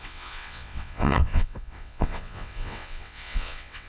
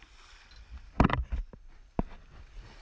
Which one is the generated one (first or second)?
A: first